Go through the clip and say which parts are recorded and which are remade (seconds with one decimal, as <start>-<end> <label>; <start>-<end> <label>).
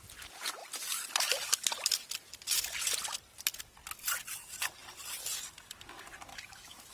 0.0-6.3 recorded; 6.3-6.9 remade